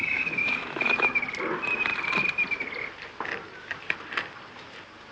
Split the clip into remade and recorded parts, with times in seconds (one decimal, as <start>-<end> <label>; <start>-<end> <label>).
0.0-1.2 remade; 1.2-5.1 recorded